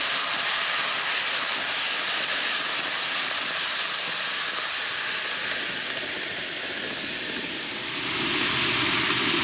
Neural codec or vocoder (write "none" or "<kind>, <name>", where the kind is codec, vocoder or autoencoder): none